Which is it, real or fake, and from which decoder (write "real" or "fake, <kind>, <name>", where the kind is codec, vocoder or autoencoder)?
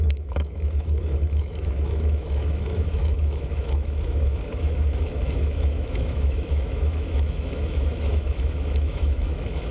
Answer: fake, autoencoder, DAC-VAE